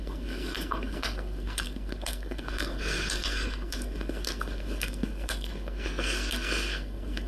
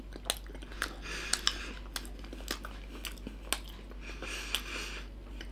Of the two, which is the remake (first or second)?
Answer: first